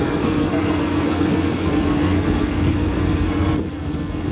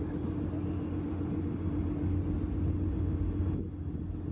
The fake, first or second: first